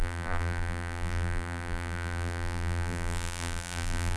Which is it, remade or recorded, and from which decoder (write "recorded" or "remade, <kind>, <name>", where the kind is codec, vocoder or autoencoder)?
remade, vocoder, BigVGAN v2